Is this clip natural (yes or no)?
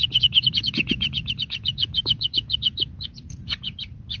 no